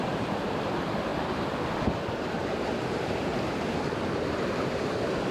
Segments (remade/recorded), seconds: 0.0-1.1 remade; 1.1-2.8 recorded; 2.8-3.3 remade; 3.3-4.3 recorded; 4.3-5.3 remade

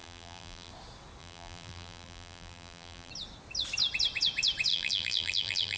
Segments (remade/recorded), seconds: 0.0-0.7 remade; 0.7-1.2 recorded; 1.2-3.1 remade; 3.1-4.7 recorded; 4.7-5.8 remade

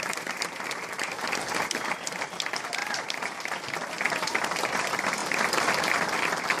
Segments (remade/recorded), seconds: 0.0-2.8 recorded; 2.8-3.6 remade; 3.6-5.2 recorded; 5.2-5.7 remade; 5.7-6.6 recorded